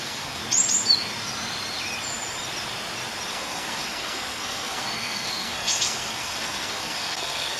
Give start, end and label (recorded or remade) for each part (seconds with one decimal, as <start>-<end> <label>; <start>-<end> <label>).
0.0-0.4 remade; 0.4-3.3 recorded; 3.3-7.6 remade